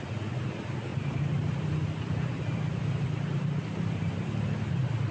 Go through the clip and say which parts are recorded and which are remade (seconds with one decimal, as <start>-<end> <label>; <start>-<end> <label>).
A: 0.0-0.9 recorded; 0.9-4.0 remade; 4.0-5.1 recorded